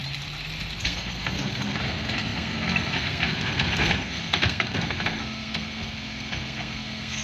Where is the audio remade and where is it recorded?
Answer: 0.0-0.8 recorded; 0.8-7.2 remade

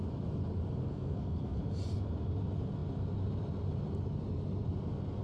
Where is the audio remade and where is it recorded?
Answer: 0.0-0.8 recorded; 0.8-1.6 remade; 1.6-5.2 recorded

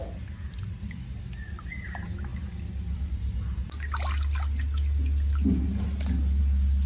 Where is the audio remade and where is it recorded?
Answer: 0.0-6.9 recorded

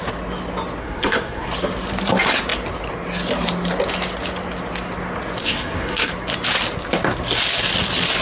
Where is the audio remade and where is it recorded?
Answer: 0.0-0.8 recorded; 0.8-1.5 remade; 1.5-5.4 recorded; 5.4-6.1 remade; 6.1-8.2 recorded